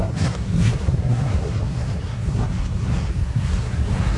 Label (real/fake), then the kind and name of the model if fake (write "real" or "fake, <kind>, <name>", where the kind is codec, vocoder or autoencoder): fake, codec, SNAC